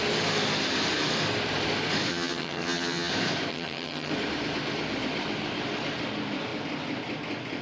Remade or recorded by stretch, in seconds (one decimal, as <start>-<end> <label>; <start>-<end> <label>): 0.0-2.1 recorded; 2.1-3.1 remade; 3.1-3.5 recorded; 3.5-4.1 remade; 4.1-7.6 recorded